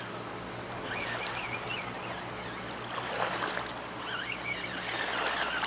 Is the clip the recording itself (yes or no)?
yes